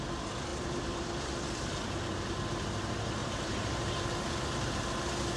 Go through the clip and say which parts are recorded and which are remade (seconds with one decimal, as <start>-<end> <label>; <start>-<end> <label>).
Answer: 0.0-0.5 recorded; 0.5-1.2 remade; 1.2-3.2 recorded; 3.2-4.6 remade; 4.6-5.4 recorded